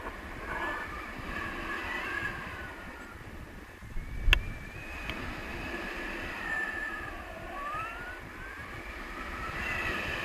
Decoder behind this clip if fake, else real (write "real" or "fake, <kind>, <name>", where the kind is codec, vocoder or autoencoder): real